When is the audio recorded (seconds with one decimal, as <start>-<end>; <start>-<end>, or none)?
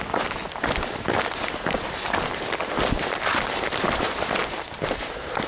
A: 0.0-5.5